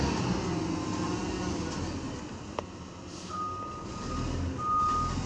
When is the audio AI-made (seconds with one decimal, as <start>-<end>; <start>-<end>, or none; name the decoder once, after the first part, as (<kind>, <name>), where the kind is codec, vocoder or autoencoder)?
none